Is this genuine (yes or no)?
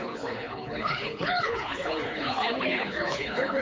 no